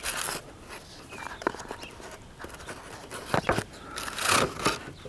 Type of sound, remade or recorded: recorded